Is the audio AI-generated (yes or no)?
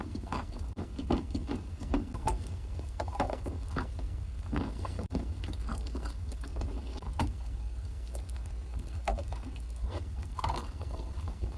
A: yes